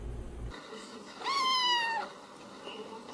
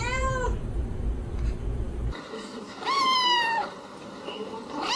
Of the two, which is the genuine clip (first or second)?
first